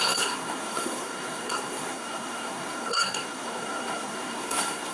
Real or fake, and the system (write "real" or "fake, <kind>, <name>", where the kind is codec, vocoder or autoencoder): fake, codec, SNAC